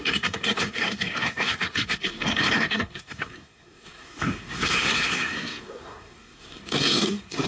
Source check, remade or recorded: remade